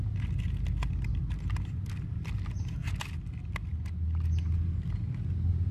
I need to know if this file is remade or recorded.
recorded